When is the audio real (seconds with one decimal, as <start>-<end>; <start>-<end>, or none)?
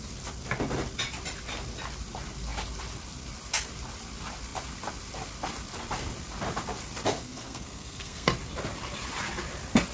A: 0.0-7.2; 8.3-9.9